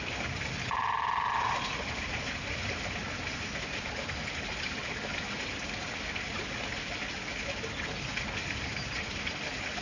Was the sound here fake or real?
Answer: real